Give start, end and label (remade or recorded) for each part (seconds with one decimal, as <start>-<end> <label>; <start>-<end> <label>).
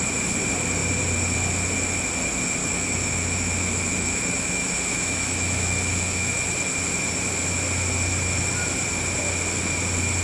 0.0-2.6 recorded; 2.6-6.3 remade; 6.3-10.2 recorded